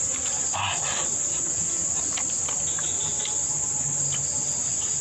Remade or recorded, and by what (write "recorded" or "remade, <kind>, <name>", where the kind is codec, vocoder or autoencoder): recorded